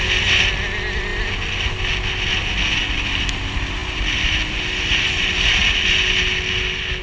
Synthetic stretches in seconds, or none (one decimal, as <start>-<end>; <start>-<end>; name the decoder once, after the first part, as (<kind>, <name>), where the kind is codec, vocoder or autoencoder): none

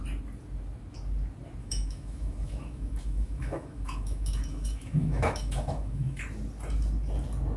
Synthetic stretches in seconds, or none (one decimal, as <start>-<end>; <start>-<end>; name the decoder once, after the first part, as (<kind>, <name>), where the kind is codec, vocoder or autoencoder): 1.6-6.2 (autoencoder, DAC-VAE)